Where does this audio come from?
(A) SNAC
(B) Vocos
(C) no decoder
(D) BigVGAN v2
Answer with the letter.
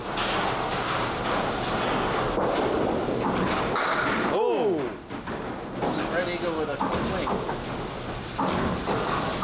C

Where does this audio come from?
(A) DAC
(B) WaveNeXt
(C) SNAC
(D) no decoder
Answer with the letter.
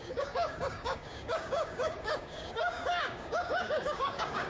A